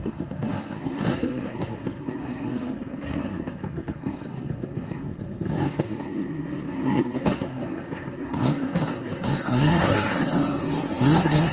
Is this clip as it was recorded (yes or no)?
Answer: no